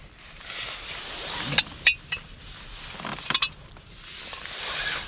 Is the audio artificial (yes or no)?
no